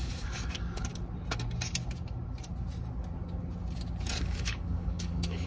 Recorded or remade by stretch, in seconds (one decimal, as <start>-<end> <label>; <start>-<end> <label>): 0.0-0.9 remade; 0.9-4.2 recorded; 4.2-5.5 remade